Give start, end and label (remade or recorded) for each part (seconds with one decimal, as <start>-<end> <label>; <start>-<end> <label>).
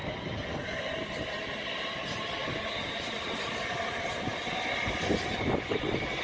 0.0-0.8 remade; 0.8-2.4 recorded; 2.4-3.8 remade; 3.8-6.2 recorded